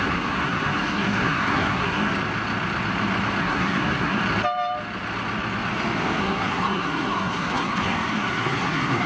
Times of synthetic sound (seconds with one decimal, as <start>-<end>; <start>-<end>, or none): 0.0-2.1; 3.4-4.2; 6.2-9.1